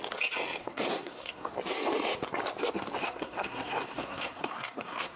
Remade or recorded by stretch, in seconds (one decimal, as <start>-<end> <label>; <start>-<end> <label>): 0.0-0.6 recorded; 0.6-1.5 remade; 1.5-3.0 recorded; 3.0-5.2 remade